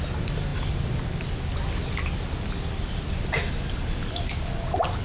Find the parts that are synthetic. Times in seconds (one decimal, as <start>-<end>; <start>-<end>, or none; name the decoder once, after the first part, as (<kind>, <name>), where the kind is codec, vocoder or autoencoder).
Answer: none